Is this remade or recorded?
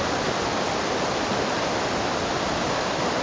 recorded